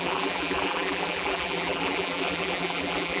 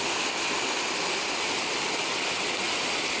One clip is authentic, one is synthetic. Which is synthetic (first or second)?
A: first